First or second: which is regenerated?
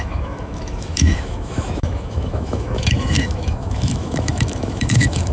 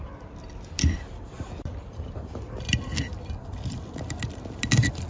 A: first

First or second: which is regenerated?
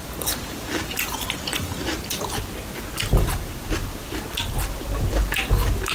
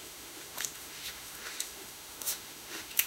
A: second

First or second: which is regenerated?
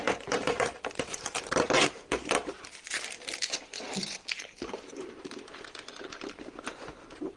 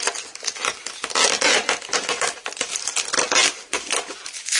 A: first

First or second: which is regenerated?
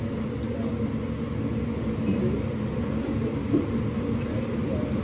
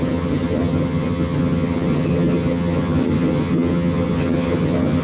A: second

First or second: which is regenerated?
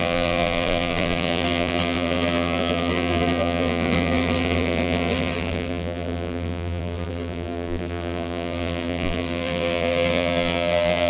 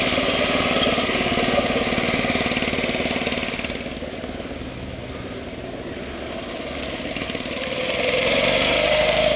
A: first